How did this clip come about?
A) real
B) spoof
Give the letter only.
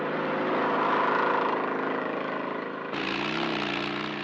A